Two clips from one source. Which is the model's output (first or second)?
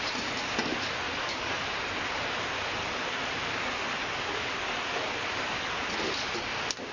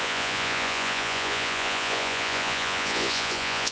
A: second